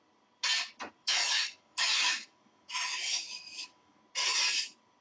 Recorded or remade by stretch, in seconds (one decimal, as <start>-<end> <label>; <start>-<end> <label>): 0.0-1.0 recorded; 1.0-4.0 remade; 4.0-5.0 recorded